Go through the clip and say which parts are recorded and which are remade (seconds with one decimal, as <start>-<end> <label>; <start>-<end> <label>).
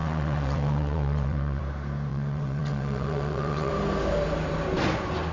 0.0-1.6 remade; 1.6-2.1 recorded; 2.1-3.7 remade; 3.7-5.3 recorded